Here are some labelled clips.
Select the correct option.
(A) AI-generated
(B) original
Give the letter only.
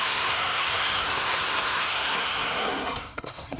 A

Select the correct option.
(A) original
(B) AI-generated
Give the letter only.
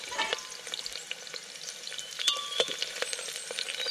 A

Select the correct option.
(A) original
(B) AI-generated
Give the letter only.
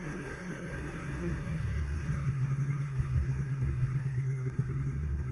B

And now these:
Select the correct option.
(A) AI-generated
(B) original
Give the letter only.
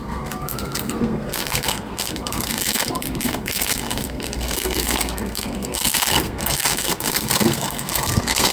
A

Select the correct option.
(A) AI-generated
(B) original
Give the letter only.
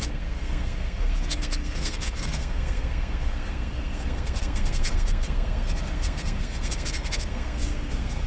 A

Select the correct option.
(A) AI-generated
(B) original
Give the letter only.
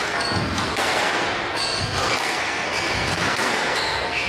A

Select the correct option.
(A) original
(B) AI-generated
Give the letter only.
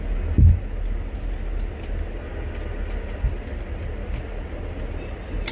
A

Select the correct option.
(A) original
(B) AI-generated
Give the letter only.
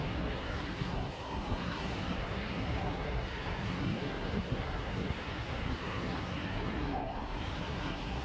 B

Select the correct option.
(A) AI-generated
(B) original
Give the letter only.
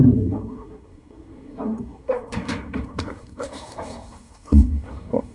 A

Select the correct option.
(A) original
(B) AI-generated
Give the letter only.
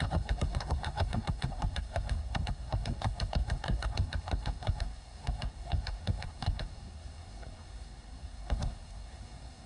B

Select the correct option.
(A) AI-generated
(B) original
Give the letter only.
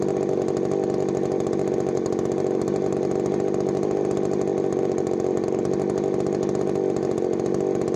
B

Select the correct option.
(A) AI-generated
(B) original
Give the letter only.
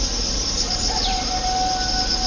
B